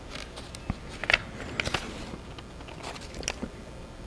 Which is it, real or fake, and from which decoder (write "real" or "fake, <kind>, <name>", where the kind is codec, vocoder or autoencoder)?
real